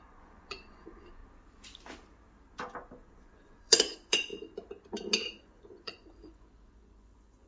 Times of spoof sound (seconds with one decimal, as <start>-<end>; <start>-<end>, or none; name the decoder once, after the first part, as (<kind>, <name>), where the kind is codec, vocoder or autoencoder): 0.0-1.2 (vocoder, Vocos); 3.1-4.3; 5.4-7.5